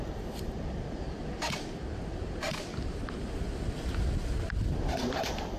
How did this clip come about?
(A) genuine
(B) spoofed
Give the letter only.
A